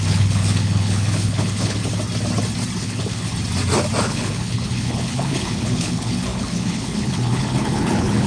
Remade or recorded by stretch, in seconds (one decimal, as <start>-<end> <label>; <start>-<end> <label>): 0.0-1.8 remade; 1.8-2.8 recorded; 2.8-3.3 remade; 3.3-4.0 recorded; 4.0-8.3 remade